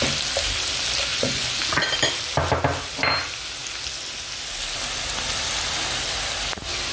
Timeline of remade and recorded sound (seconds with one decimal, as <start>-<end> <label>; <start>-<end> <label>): 0.0-1.1 recorded; 1.1-1.6 remade; 1.6-6.9 recorded